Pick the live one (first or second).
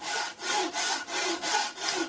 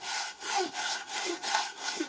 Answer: first